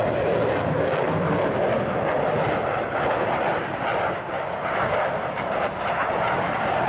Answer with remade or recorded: recorded